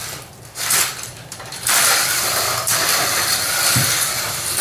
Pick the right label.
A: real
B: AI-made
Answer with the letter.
B